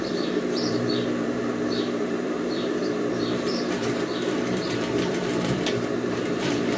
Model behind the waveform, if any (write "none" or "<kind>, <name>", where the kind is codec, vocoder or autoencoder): vocoder, BigVGAN v2